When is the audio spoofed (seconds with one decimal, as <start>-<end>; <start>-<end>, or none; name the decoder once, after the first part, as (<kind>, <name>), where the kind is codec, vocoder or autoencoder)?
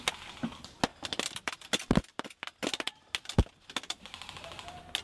none